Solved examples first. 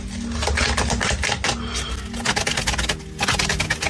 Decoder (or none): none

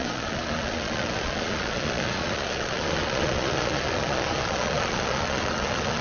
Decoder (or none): vocoder, Vocos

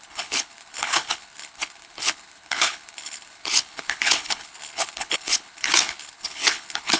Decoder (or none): codec, HILCodec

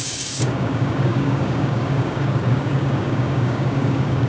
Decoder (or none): codec, DAC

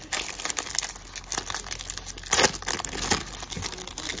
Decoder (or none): none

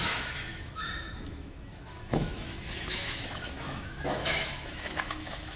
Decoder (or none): autoencoder, DAC-VAE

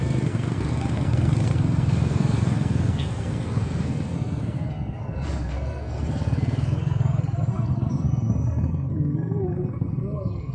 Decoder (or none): codec, SNAC